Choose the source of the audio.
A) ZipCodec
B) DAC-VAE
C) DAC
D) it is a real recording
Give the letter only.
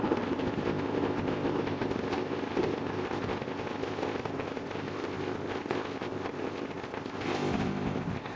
A